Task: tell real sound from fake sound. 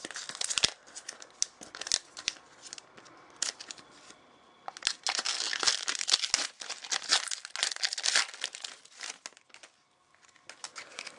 real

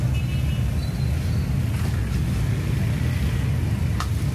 real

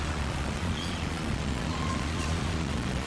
fake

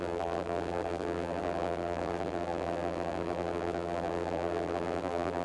fake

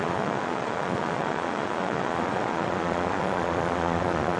fake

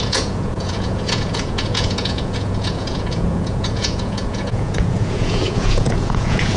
fake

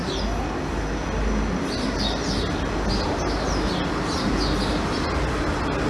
real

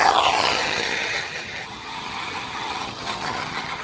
fake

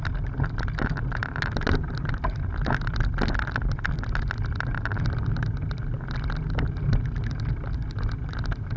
real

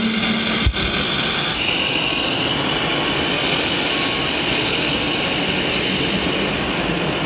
real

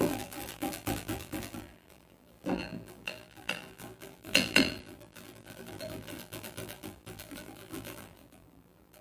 fake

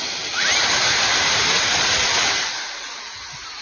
real